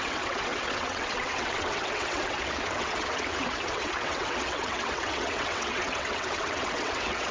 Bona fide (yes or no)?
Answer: no